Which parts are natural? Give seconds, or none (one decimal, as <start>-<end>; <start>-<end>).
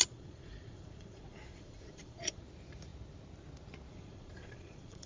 2.4-3.9